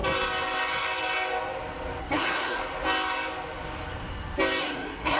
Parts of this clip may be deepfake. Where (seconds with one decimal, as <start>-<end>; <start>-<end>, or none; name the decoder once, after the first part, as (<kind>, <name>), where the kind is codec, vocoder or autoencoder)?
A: 2.0-2.6 (codec, SNAC); 4.6-5.2